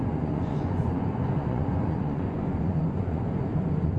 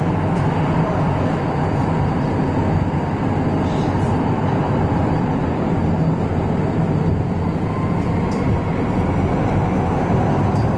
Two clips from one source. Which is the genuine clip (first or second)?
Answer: second